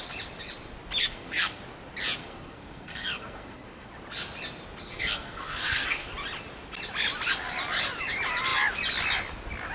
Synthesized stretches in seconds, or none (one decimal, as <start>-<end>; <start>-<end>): 1.0-1.6; 2.2-3.9; 4.8-6.1